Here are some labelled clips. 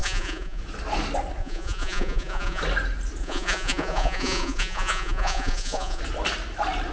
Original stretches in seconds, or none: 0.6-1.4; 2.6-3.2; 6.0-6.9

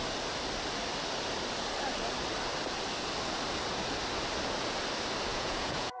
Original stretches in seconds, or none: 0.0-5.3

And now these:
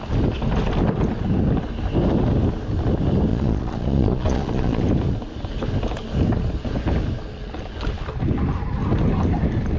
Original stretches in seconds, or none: 0.0-3.3; 4.8-9.8

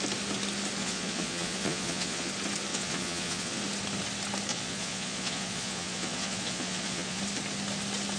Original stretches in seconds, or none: 0.0-0.8; 2.3-2.7; 3.6-4.5; 7.2-8.2

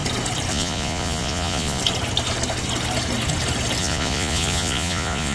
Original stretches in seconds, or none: 0.0-0.5; 1.8-3.8

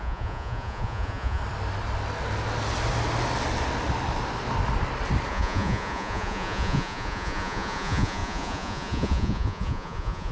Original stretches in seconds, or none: 1.4-5.3

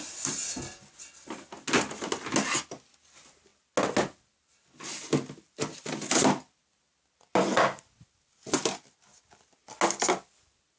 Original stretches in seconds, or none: 0.0-10.8

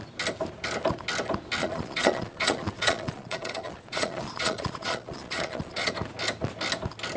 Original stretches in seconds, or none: 0.0-1.6; 5.9-7.2